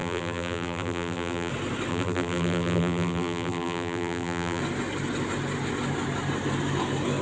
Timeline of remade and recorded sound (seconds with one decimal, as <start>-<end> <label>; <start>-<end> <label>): 0.0-1.5 remade; 1.5-1.9 recorded; 1.9-4.6 remade; 4.6-7.2 recorded